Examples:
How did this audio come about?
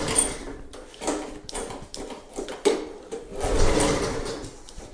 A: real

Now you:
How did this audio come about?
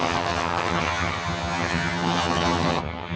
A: fake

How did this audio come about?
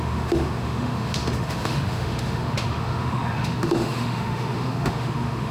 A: fake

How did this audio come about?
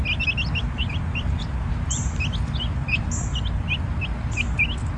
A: real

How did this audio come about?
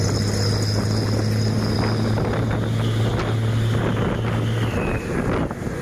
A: real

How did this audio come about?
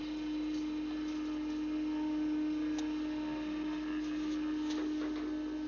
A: real